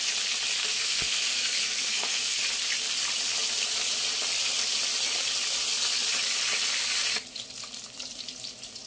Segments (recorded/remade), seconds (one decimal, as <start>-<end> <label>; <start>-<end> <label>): 0.0-0.6 recorded; 0.6-2.4 remade; 2.4-8.9 recorded